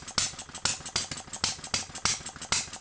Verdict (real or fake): real